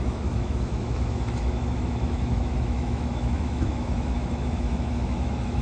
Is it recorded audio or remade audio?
remade